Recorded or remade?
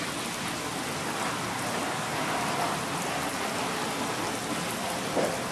recorded